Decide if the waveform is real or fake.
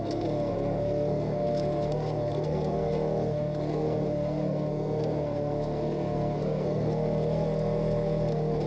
fake